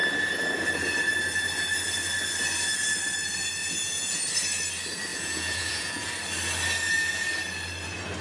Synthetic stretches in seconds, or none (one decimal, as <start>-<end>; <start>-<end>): 3.6-4.2; 5.1-6.1